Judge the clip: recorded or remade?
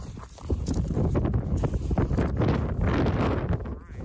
recorded